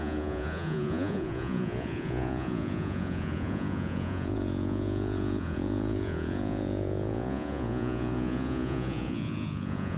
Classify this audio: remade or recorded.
remade